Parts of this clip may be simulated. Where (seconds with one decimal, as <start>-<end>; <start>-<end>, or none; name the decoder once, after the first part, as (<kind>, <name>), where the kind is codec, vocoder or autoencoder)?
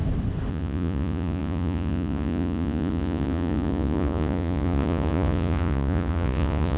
0.5-6.8 (vocoder, Vocos)